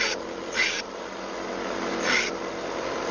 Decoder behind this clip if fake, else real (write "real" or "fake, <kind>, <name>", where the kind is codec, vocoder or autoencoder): real